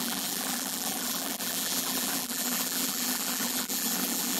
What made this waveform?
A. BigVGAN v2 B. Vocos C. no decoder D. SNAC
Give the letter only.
A